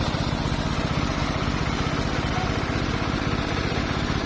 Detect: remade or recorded recorded